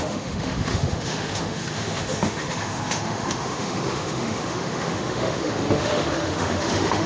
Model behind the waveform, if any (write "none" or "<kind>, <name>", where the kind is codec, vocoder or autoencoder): autoencoder, DAC-VAE